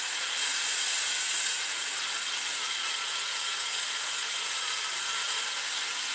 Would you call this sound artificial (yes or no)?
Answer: yes